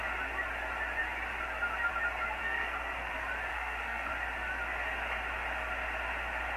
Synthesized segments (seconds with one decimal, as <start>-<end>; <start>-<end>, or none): 2.4-3.1; 3.5-4.1